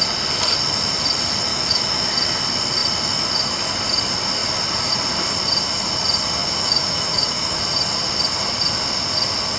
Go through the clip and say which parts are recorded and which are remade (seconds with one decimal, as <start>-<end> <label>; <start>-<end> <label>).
0.0-1.5 recorded; 1.5-2.1 remade; 2.1-6.4 recorded; 6.4-7.6 remade; 7.6-9.6 recorded